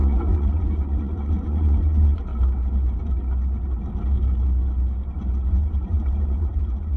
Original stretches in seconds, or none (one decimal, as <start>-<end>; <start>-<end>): 2.3-5.5